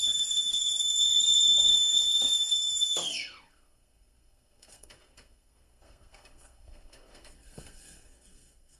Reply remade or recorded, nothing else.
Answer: remade